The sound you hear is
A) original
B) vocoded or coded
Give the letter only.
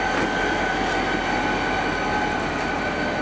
A